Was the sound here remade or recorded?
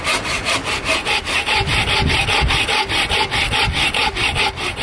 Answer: recorded